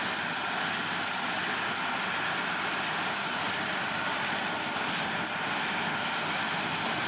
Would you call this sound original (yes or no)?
no